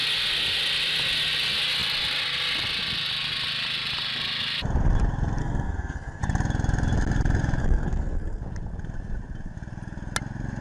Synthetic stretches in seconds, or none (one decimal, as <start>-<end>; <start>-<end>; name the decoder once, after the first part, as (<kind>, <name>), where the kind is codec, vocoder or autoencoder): 5.4-6.2 (codec, SNAC); 7.6-8.4